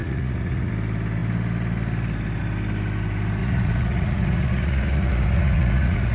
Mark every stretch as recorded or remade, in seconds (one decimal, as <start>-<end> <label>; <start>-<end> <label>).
0.0-0.7 remade; 0.7-3.4 recorded; 3.4-6.1 remade